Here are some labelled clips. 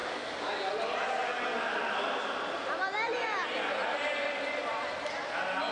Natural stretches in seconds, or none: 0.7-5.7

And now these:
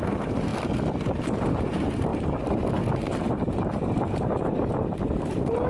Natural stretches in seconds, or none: 0.5-1.2

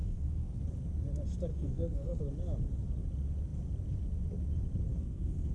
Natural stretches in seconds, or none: 0.6-1.5; 2.2-4.9

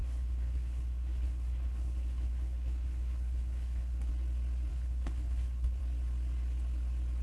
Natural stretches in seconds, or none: 4.1-4.7; 5.8-7.2

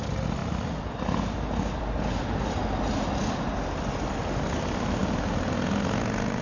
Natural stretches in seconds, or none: 0.0-6.4

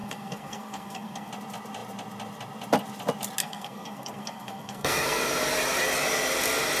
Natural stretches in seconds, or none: 1.3-3.4; 5.2-6.8

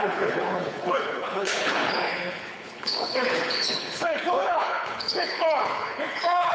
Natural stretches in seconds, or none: none